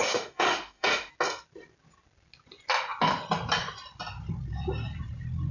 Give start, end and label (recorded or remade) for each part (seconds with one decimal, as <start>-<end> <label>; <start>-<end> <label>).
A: 0.0-1.1 remade; 1.1-5.5 recorded